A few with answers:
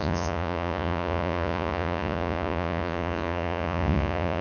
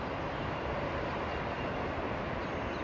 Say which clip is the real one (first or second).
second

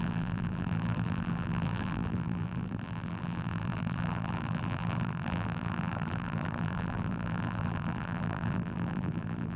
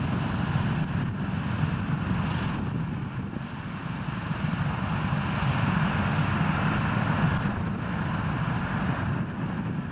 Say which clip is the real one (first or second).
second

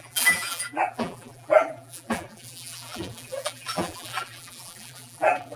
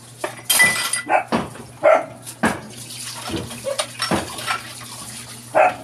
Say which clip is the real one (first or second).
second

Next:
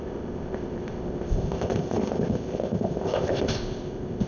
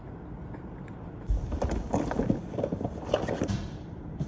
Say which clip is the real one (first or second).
second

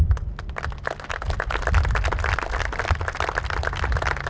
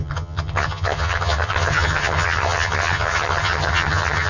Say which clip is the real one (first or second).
first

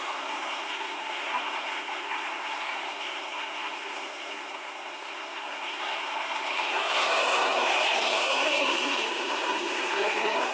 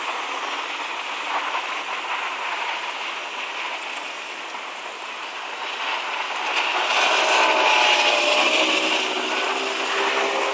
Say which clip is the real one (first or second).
second